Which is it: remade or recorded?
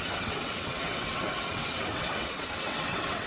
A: remade